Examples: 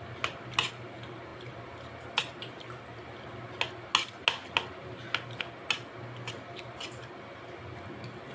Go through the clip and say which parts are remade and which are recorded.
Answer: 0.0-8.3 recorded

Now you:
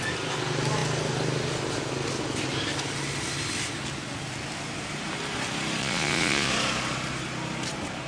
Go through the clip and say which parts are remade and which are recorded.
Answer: 0.0-5.8 recorded; 5.8-6.5 remade; 6.5-8.1 recorded

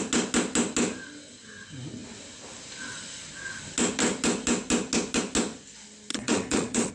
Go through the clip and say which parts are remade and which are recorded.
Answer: 0.0-6.1 recorded; 6.1-6.9 remade

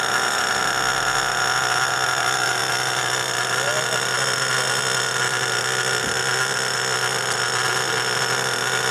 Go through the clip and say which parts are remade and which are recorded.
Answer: 0.0-8.9 recorded